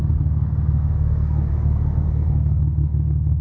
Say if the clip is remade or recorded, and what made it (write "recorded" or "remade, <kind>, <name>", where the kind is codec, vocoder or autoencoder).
remade, codec, SNAC